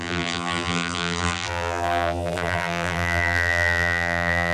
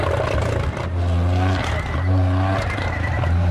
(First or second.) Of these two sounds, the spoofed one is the first